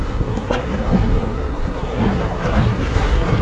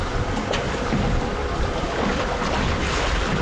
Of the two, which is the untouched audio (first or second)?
second